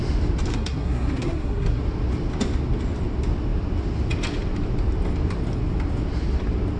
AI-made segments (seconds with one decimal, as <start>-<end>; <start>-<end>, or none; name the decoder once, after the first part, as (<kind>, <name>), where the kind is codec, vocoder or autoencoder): 0.5-1.8 (codec, SNAC)